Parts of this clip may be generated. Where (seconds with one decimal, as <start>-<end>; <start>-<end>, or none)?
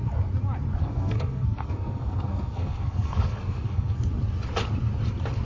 0.8-4.0